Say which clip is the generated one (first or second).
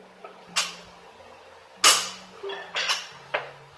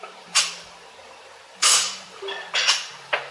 second